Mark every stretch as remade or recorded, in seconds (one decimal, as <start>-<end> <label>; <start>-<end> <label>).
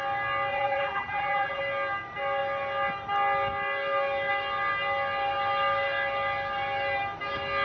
0.0-0.5 recorded; 0.5-1.6 remade; 1.6-7.6 recorded